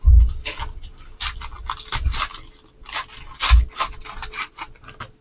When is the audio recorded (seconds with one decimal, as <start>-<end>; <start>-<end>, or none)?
0.0-5.2